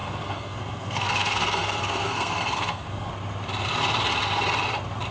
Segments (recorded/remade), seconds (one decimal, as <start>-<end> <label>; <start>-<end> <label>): 0.0-3.1 remade; 3.1-5.1 recorded